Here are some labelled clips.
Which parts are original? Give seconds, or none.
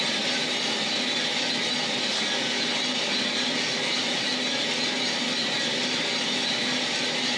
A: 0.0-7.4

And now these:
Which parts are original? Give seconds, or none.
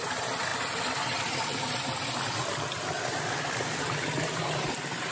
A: 0.0-5.1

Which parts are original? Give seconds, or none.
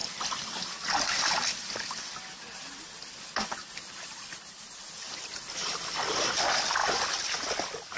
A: 0.0-8.0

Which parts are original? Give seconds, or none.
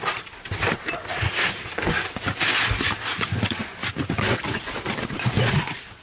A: 0.0-1.7; 2.4-3.1; 5.5-6.0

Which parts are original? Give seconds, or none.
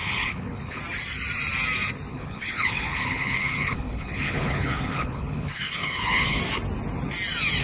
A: 0.8-2.1; 6.4-7.6